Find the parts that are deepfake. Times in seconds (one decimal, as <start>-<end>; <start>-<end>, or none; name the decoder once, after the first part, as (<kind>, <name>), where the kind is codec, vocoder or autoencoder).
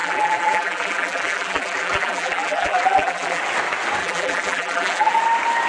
0.0-3.4 (vocoder, BigVGAN v2); 4.0-5.2